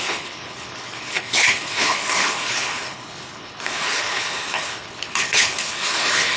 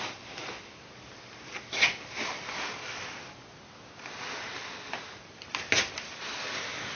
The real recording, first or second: second